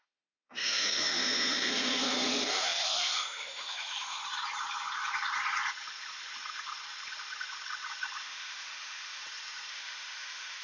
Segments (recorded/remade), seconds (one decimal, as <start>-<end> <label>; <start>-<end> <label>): 0.0-4.2 remade; 4.2-8.2 recorded; 8.2-9.2 remade; 9.2-9.7 recorded; 9.7-10.6 remade